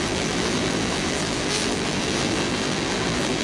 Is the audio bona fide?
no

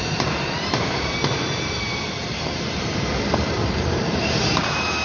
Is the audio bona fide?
no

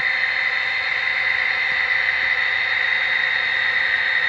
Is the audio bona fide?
yes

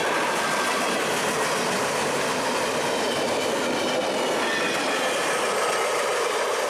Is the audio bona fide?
yes